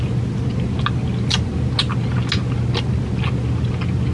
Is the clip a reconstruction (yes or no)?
no